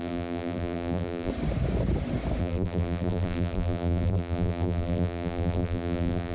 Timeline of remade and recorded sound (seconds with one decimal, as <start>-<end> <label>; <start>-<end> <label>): 0.0-1.3 remade; 1.3-2.4 recorded; 2.4-6.3 remade